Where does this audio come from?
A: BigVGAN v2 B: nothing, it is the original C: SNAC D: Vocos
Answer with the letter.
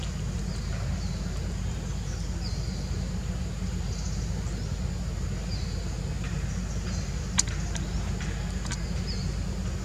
B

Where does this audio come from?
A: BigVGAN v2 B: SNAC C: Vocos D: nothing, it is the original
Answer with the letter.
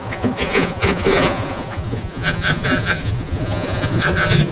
C